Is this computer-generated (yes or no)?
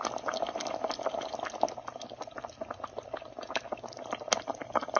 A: yes